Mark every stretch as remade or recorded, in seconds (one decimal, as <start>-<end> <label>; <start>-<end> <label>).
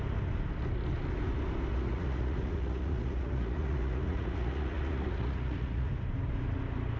0.0-1.7 recorded; 1.7-5.9 remade; 5.9-7.0 recorded